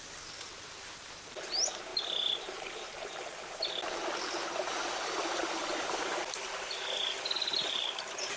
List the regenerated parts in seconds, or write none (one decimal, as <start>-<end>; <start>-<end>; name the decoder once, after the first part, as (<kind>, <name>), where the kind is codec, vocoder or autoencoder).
none